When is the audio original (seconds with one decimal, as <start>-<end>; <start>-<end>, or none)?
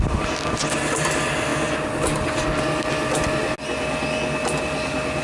0.0-5.2